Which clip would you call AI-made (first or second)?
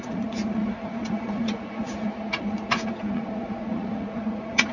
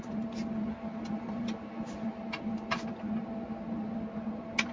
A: first